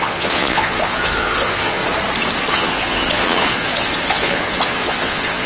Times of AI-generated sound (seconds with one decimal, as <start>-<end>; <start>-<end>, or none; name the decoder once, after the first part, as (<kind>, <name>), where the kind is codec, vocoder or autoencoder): 0.0-1.8 (vocoder, Vocos); 2.5-5.5